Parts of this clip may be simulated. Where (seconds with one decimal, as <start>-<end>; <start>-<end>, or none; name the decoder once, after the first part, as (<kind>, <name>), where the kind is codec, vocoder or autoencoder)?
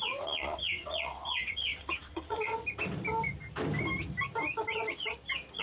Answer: 0.0-2.5 (vocoder, WaveNeXt)